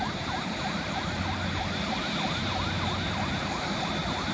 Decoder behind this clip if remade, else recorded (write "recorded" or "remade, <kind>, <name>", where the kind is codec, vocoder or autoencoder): recorded